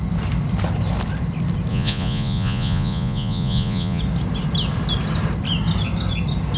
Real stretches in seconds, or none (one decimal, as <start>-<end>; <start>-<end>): 0.0-1.7; 4.0-6.6